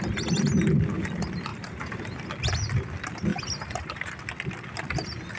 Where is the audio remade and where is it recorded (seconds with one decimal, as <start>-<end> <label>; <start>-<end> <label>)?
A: 0.0-1.5 recorded; 1.5-2.2 remade; 2.2-3.3 recorded; 3.3-4.2 remade; 4.2-5.4 recorded